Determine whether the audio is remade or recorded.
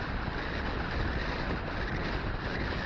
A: recorded